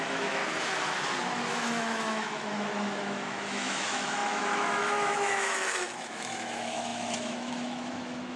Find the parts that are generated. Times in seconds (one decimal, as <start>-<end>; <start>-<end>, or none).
0.0-0.4; 1.2-8.4